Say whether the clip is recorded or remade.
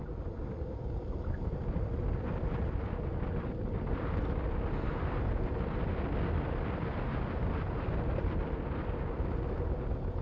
recorded